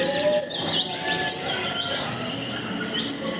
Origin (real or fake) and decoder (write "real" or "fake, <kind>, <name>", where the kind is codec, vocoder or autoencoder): real